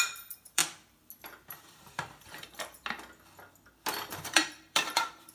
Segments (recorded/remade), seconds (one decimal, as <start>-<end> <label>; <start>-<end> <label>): 0.0-0.6 remade; 0.6-1.5 recorded; 1.5-2.8 remade; 2.8-4.1 recorded; 4.1-5.3 remade